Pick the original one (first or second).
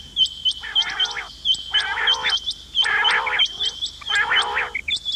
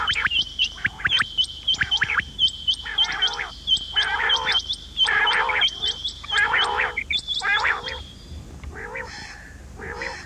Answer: first